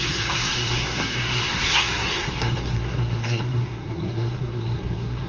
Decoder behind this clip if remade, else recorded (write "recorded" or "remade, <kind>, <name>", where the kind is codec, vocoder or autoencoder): remade, codec, SNAC